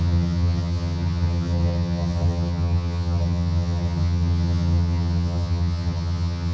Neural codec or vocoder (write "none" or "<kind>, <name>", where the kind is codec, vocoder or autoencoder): vocoder, HiFi-GAN